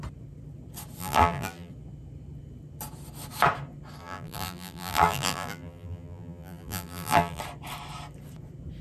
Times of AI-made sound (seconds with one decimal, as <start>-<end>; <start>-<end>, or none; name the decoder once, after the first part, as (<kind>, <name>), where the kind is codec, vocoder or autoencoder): 1.0-1.7 (vocoder, BigVGAN v2); 4.0-7.4